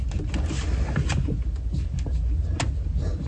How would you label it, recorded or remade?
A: recorded